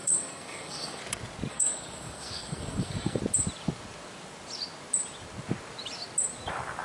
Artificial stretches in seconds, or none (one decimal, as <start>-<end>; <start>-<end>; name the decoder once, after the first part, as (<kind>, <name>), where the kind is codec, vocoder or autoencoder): 0.0-1.0 (codec, SNAC); 1.5-3.2